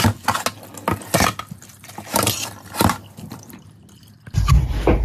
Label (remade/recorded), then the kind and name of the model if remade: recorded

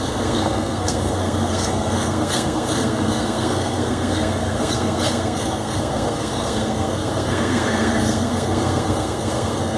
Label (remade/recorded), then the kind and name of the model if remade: remade, codec, SNAC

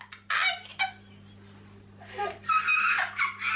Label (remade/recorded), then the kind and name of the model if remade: recorded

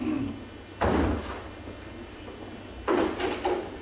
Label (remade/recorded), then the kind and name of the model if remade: recorded